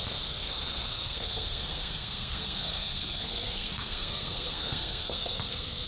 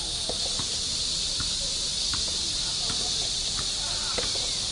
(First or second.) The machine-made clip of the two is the first